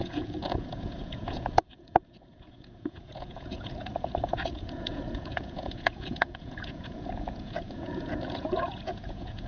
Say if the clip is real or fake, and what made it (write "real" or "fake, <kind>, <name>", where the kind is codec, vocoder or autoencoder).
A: fake, vocoder, Vocos